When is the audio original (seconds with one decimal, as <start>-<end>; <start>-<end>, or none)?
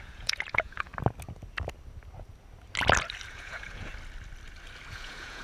0.9-3.3; 3.9-4.9